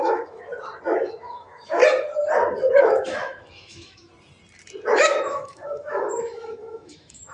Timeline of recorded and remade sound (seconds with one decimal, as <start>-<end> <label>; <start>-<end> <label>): 0.0-0.5 remade; 0.5-1.0 recorded; 1.0-1.8 remade; 1.8-2.7 recorded; 2.7-4.1 remade; 4.1-4.9 recorded; 4.9-7.3 remade